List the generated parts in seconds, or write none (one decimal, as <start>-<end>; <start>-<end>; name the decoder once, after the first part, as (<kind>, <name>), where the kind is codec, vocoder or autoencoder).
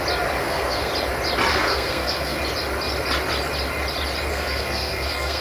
0.4-0.9 (codec, SNAC); 1.5-2.4; 4.3-5.4